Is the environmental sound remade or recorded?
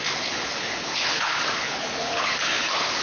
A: remade